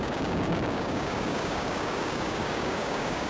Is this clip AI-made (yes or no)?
yes